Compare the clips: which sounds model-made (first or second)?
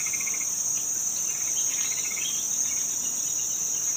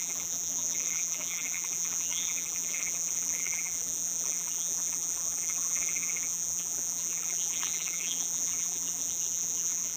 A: second